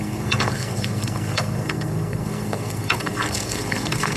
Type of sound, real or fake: fake